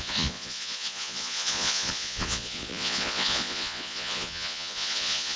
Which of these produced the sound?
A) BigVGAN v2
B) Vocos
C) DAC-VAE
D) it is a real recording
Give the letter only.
B